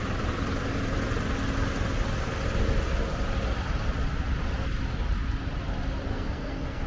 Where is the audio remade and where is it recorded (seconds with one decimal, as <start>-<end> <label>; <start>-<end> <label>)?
0.0-6.1 recorded; 6.1-6.9 remade